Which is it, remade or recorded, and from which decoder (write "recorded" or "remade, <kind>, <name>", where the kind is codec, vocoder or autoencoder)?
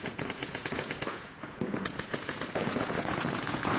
remade, vocoder, Vocos